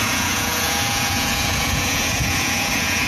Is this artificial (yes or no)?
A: yes